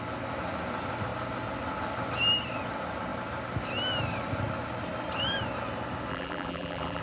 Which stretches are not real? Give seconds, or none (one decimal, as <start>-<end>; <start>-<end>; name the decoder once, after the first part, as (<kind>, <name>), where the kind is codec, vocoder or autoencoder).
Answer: 6.1-7.0 (vocoder, BigVGAN v2)